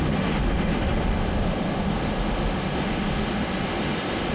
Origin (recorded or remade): remade